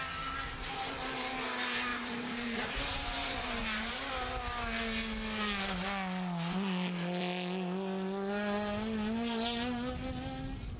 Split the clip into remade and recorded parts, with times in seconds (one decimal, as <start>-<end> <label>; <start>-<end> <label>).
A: 0.0-1.9 recorded; 1.9-4.1 remade; 4.1-10.8 recorded